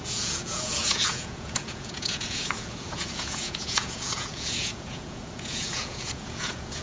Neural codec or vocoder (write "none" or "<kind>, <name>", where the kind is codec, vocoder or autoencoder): vocoder, Vocos